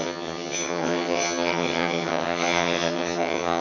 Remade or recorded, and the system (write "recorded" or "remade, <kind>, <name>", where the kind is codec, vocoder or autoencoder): remade, vocoder, HiFi-GAN